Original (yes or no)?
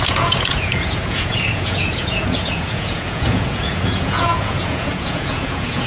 no